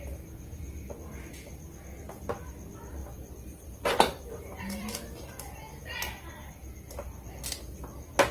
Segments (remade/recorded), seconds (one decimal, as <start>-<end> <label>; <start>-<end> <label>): 0.0-3.0 recorded; 3.0-6.5 remade; 6.5-8.3 recorded